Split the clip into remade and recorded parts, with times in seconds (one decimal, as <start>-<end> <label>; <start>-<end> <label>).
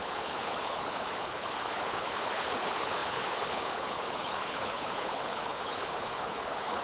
0.0-6.8 remade